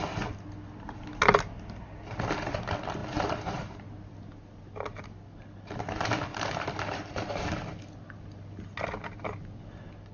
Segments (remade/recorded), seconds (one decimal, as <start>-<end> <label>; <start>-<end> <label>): 0.0-3.0 recorded; 3.0-4.1 remade; 4.1-6.3 recorded; 6.3-7.4 remade; 7.4-10.1 recorded

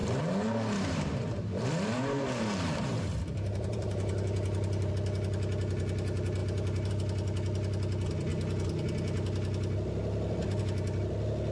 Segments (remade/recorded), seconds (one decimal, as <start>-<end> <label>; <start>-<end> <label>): 0.0-4.9 remade; 4.9-6.4 recorded; 6.4-6.9 remade; 6.9-11.5 recorded

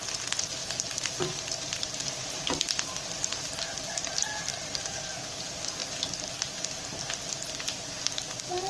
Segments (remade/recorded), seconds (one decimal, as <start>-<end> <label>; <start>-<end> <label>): 0.0-0.6 recorded; 0.6-3.9 remade; 3.9-4.5 recorded; 4.5-5.1 remade; 5.1-8.7 recorded